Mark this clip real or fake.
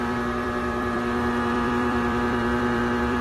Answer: fake